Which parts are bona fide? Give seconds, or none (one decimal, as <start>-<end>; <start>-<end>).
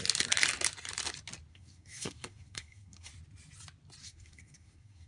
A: 0.0-1.5; 3.1-4.0